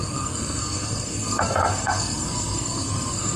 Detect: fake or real fake